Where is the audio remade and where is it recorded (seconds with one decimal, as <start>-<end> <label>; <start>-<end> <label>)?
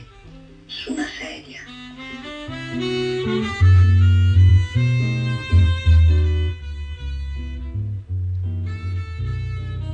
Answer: 0.0-9.9 recorded